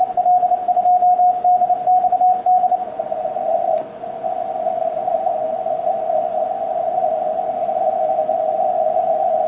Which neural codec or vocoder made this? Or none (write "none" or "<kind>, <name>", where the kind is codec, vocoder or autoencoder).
none